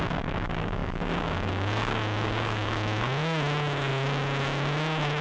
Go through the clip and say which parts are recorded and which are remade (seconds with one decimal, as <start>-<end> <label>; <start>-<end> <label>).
0.0-5.2 remade